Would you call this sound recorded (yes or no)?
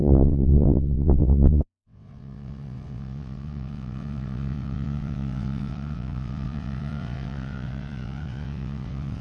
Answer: no